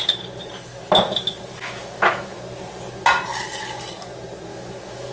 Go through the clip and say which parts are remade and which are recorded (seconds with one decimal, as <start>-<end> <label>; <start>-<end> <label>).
0.0-1.5 recorded; 1.5-2.4 remade; 2.4-4.5 recorded; 4.5-5.1 remade